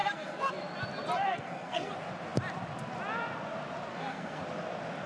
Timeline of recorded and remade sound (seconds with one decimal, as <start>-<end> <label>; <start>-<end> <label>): 0.0-0.5 remade; 0.5-1.3 recorded; 1.3-1.9 remade; 1.9-3.9 recorded; 3.9-4.4 remade; 4.4-5.1 recorded

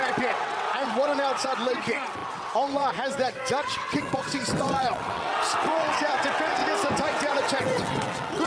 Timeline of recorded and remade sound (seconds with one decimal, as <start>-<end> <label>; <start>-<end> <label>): 0.0-6.6 remade; 6.6-7.3 recorded; 7.3-8.5 remade

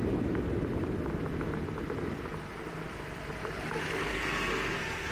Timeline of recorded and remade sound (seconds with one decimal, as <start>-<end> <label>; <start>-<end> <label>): 0.0-4.1 recorded; 4.1-5.1 remade

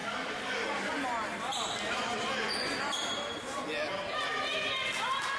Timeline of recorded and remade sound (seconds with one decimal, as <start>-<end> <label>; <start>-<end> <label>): 0.0-0.9 remade; 0.9-5.4 recorded

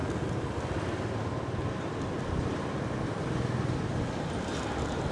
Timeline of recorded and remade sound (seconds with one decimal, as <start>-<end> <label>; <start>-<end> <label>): 0.0-5.1 recorded

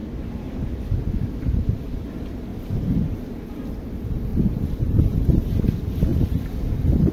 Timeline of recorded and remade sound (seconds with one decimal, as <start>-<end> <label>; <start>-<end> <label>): 0.0-0.9 remade; 0.9-2.5 recorded; 2.5-3.4 remade; 3.4-4.3 recorded; 4.3-5.0 remade; 5.0-6.1 recorded; 6.1-7.1 remade